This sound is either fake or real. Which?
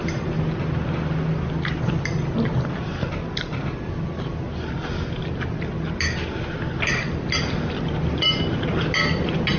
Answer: real